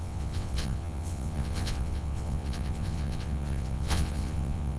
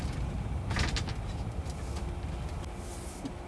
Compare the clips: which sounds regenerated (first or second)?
first